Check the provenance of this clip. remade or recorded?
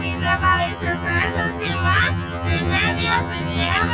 remade